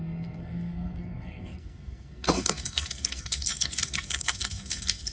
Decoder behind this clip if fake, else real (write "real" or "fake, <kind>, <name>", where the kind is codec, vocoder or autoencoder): fake, codec, SNAC